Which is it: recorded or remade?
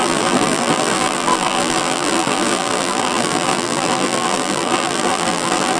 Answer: remade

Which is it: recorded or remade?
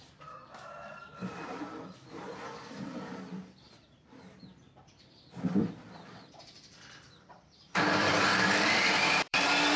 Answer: remade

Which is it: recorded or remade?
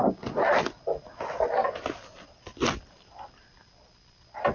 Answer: recorded